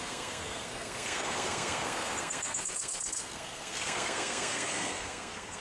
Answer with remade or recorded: remade